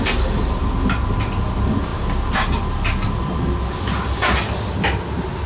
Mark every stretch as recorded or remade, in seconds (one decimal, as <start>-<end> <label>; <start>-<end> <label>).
0.0-5.5 recorded